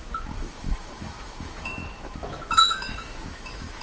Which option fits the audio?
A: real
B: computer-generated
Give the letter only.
B